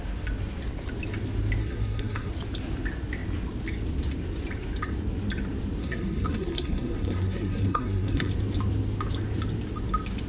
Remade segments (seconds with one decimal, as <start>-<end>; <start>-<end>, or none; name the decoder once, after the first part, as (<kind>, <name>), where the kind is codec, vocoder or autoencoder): 1.6-2.3 (codec, SNAC); 5.8-8.3